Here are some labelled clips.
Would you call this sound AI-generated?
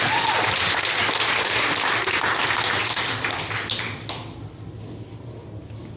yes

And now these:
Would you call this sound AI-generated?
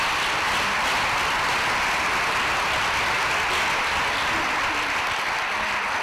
no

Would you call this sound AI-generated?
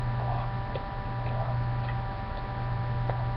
no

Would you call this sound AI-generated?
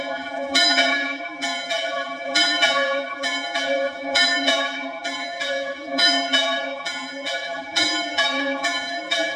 yes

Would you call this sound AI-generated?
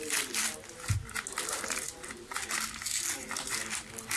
no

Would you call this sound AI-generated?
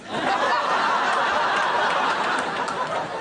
yes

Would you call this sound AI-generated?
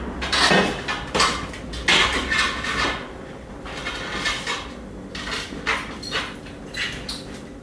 no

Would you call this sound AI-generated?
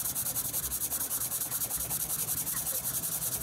no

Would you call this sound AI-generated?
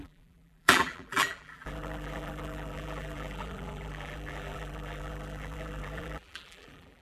yes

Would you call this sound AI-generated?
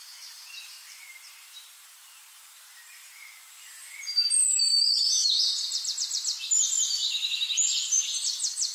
yes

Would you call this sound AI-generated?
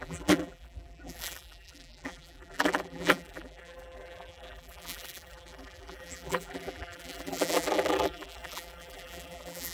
yes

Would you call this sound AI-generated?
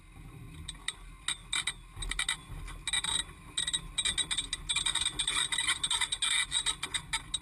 no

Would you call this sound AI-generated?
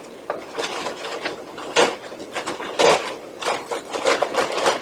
yes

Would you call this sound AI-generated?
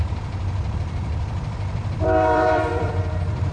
yes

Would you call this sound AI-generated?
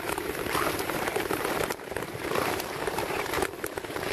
yes